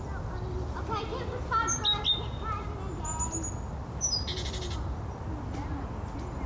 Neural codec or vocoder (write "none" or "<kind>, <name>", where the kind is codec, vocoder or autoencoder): none